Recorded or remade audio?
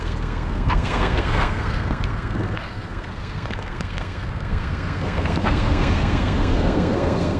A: remade